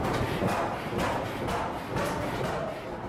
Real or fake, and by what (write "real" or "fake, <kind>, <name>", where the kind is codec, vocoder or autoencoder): real